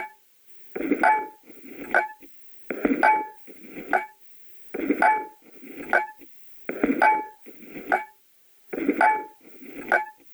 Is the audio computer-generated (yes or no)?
no